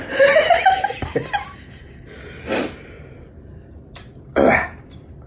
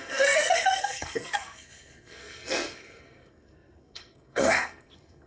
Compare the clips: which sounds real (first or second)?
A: first